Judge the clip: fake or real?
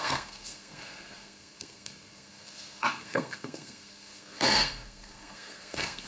fake